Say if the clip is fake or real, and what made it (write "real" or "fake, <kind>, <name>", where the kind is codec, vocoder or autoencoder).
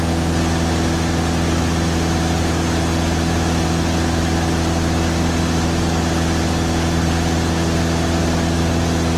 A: real